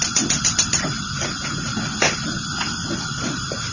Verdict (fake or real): real